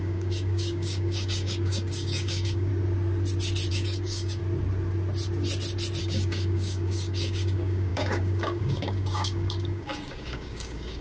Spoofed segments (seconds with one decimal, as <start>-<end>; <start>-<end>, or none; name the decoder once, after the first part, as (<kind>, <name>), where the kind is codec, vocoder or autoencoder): 0.0-2.7 (codec, DAC); 3.7-4.4; 6.0-11.0